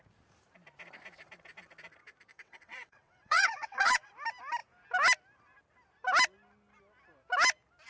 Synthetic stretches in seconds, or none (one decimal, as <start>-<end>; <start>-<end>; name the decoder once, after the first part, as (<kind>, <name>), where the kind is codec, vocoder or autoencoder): 2.3-4.1 (vocoder, WaveNeXt)